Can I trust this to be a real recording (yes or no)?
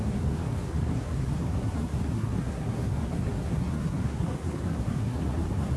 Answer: no